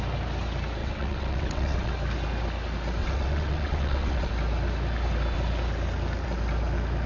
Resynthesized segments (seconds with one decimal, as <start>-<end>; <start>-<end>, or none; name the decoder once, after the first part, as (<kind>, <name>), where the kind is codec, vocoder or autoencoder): 0.8-1.9 (vocoder, WaveNeXt); 3.0-4.3